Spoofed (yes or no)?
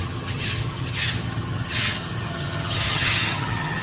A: yes